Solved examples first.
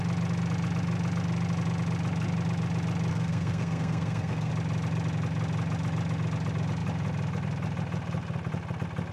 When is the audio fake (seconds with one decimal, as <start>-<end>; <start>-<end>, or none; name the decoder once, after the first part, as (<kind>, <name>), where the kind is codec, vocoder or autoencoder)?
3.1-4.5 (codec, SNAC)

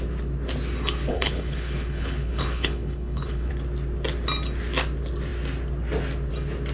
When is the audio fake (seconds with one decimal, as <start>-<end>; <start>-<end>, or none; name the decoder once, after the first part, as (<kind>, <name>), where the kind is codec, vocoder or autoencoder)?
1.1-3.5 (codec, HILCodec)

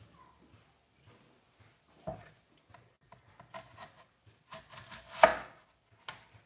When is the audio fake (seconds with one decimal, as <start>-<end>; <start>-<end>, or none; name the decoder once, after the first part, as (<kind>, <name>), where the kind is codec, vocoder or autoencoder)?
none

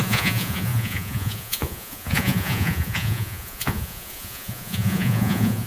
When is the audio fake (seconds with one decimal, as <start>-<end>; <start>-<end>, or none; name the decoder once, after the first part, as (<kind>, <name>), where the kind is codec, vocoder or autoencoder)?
0.0-5.7 (vocoder, Vocos)

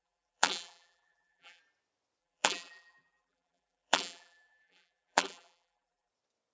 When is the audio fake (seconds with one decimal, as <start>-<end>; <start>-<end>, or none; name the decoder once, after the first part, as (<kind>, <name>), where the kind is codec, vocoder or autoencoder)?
0.0-1.6 (vocoder, BigVGAN v2); 2.2-6.1

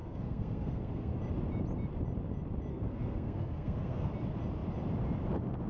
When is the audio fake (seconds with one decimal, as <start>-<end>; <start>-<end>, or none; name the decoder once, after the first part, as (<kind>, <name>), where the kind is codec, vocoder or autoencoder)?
0.0-1.2 (codec, SNAC); 2.7-4.1

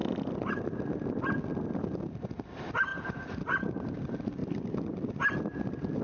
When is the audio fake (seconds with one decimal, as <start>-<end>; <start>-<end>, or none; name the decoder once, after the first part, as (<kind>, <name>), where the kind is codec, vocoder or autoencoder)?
0.0-2.3 (vocoder, BigVGAN v2); 2.9-3.9; 4.4-6.0

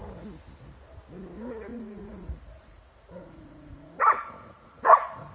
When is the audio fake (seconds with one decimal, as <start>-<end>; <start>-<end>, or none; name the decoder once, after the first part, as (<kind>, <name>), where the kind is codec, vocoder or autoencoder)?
1.7-5.3 (vocoder, Vocos)